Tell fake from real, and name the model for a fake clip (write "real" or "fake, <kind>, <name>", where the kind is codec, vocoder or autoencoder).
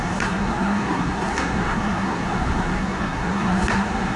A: fake, codec, SNAC